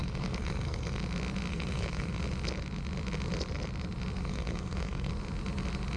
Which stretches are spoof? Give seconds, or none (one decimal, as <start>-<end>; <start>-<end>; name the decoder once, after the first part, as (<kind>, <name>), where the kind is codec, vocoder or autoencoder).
0.0-1.0 (codec, SNAC); 1.5-2.2; 4.2-5.1